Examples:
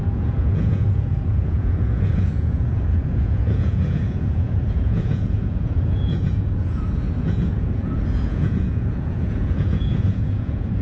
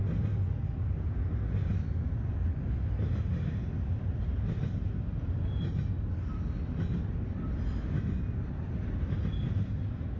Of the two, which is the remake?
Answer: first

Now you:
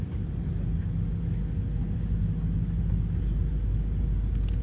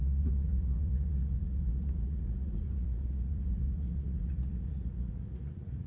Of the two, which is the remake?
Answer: second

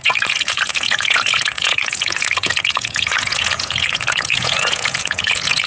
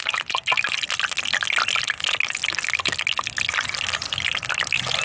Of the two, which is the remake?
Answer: first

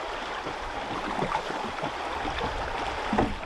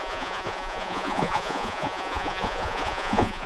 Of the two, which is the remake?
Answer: second